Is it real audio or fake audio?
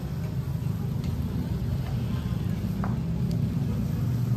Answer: real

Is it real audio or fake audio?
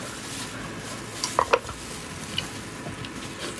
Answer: real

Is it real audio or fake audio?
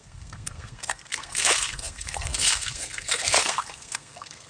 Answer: fake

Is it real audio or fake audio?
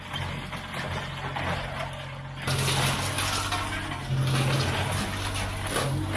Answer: real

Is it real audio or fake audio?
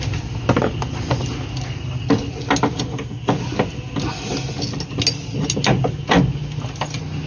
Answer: real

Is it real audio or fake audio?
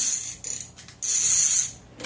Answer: real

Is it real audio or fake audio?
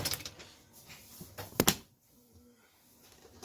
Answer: real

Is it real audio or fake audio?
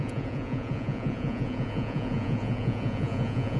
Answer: fake